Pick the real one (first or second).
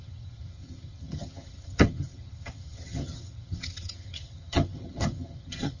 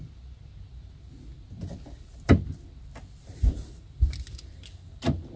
second